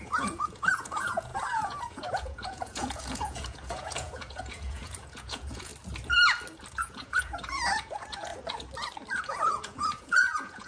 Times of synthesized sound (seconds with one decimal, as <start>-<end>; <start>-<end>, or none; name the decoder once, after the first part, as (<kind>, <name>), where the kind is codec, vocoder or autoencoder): 0.0-5.7 (vocoder, Vocos); 6.7-8.3; 9.2-10.7